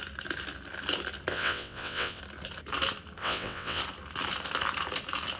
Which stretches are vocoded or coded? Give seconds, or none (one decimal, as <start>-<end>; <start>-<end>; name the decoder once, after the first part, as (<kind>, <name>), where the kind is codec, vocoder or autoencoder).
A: 1.3-2.2 (vocoder, WaveNeXt); 3.2-3.8